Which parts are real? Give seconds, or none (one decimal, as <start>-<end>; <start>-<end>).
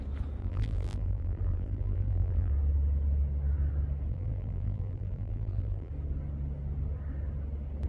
0.0-0.4; 2.5-4.1; 5.9-7.9